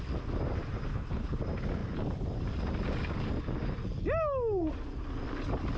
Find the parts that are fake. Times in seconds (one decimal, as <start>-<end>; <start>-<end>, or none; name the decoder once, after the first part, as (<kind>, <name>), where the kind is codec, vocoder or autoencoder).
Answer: 0.9-1.4 (codec, HILCodec)